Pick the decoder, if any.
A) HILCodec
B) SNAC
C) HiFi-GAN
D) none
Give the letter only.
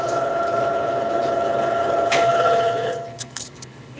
A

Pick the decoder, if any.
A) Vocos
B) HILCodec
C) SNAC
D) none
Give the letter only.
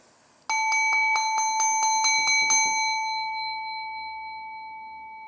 D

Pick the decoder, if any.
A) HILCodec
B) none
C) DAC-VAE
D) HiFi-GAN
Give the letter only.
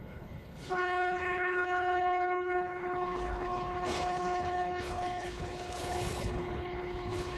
A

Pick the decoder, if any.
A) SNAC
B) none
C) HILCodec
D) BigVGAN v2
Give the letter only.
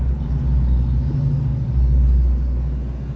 B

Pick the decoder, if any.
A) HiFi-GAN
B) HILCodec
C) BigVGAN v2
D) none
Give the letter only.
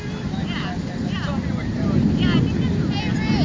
D